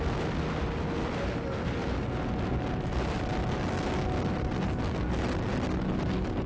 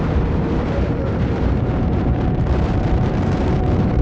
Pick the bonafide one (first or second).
first